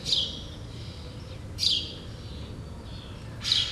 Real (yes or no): yes